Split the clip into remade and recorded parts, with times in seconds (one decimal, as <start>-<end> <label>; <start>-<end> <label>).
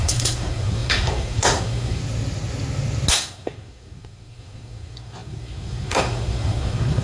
0.0-2.0 remade; 2.0-3.1 recorded; 3.1-7.0 remade